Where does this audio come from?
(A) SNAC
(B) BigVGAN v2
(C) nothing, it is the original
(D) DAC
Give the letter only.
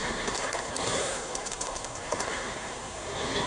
A